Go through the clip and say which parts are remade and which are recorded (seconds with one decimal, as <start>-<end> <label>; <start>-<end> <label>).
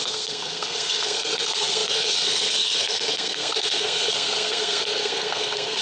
0.0-5.8 remade